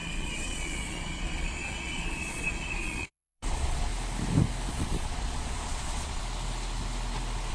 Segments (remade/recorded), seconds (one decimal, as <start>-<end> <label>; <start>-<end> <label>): 0.0-3.9 remade; 3.9-4.7 recorded; 4.7-6.2 remade; 6.2-7.5 recorded